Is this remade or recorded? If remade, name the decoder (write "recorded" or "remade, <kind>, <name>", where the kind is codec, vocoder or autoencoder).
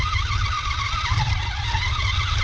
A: recorded